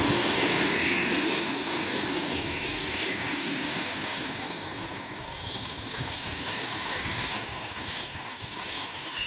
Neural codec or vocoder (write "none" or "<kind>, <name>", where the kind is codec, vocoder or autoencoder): codec, DAC